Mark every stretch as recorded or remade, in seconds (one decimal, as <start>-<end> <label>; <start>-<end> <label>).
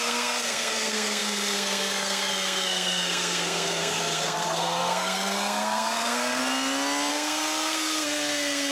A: 0.0-6.4 remade; 6.4-7.1 recorded; 7.1-8.7 remade